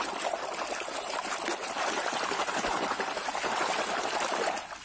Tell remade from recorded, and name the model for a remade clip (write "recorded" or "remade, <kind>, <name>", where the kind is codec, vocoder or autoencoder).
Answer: recorded